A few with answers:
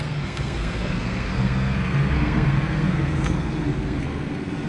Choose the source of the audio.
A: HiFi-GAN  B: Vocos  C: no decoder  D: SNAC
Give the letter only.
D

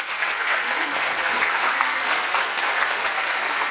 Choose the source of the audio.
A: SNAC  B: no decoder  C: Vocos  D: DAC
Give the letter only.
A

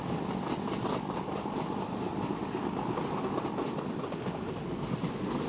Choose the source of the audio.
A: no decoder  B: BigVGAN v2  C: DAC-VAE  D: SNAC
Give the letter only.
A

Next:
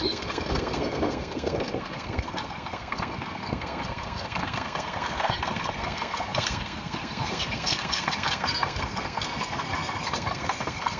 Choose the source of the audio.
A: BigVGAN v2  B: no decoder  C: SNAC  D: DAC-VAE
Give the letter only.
C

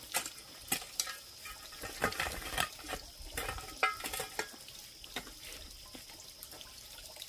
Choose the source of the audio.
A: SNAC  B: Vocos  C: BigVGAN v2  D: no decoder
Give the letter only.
D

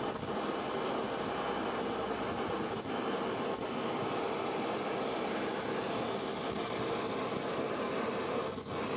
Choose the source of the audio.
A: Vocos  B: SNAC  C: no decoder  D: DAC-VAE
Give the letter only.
C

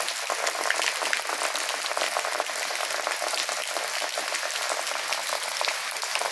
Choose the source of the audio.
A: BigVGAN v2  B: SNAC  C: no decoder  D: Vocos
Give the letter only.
C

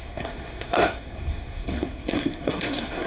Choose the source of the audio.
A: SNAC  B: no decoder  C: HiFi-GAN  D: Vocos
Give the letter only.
A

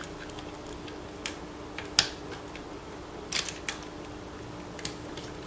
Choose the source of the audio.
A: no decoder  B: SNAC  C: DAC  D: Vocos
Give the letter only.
A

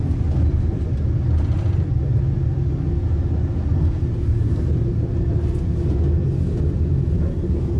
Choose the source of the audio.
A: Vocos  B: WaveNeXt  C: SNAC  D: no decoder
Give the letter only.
D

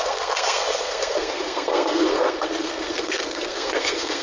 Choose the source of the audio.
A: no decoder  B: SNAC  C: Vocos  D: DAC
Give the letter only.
B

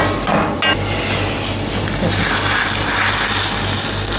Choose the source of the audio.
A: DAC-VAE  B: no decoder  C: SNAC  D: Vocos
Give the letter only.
B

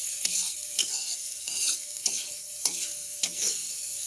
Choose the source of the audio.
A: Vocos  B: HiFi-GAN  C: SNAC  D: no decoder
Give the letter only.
C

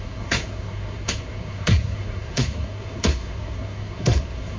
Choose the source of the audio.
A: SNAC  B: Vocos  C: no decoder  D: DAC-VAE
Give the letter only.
A